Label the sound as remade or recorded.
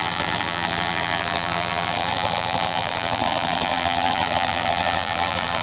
remade